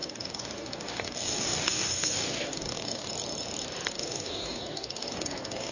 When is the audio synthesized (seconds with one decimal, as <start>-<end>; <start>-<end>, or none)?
0.0-3.1; 3.9-5.7